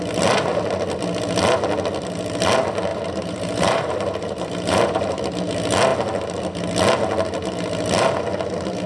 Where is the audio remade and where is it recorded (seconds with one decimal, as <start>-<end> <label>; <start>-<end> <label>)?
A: 0.0-2.9 recorded; 2.9-5.2 remade; 5.2-8.9 recorded